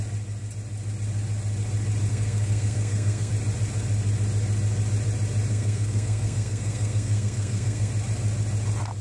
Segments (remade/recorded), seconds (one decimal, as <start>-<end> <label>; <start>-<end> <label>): 0.0-2.1 recorded; 2.1-3.3 remade; 3.3-5.5 recorded; 5.5-7.9 remade; 7.9-9.0 recorded